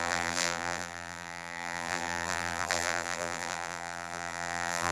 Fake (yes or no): yes